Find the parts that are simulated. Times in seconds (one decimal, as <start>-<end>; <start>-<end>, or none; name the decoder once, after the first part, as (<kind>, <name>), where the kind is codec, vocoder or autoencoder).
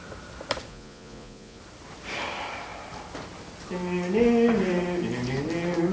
0.7-1.6 (vocoder, Vocos)